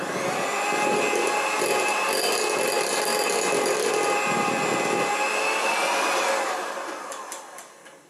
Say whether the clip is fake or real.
real